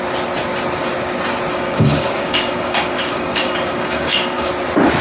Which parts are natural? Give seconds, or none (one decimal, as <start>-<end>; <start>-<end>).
0.0-1.5; 4.5-5.0